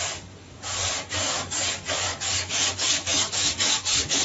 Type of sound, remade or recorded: remade